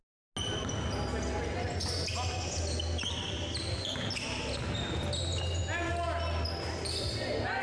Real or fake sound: real